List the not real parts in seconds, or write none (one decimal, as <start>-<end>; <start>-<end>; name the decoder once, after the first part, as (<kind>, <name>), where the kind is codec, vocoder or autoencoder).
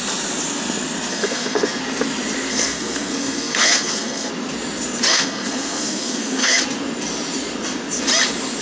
1.1-1.8 (codec, SNAC); 2.5-4.3; 5.1-6.6